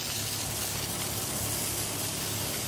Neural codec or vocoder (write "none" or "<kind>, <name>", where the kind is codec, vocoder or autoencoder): none